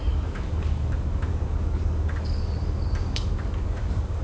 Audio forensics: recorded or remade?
remade